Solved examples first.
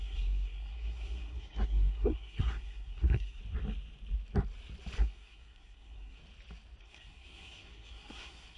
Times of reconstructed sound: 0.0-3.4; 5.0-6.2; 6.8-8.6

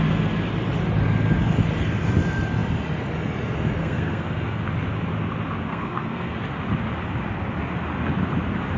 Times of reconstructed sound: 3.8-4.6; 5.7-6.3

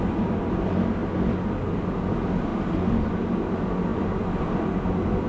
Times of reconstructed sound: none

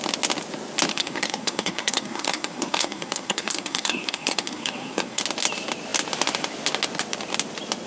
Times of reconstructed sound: 0.9-5.2